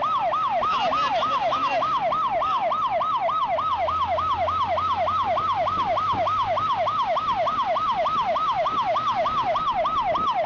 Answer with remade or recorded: recorded